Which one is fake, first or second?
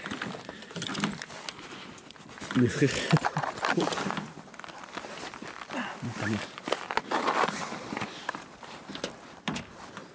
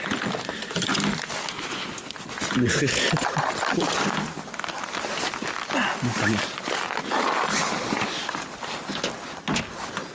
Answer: first